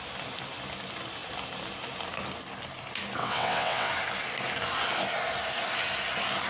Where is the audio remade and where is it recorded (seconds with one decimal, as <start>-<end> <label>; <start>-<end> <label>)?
0.0-3.2 recorded; 3.2-3.9 remade; 3.9-6.5 recorded